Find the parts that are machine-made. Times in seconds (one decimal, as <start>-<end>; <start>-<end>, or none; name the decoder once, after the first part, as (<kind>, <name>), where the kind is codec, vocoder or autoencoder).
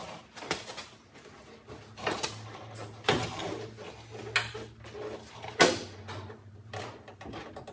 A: none